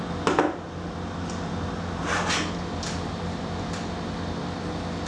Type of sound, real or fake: real